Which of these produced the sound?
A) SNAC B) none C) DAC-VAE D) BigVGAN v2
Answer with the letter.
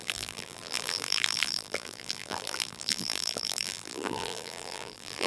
D